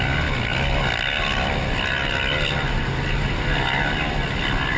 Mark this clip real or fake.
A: real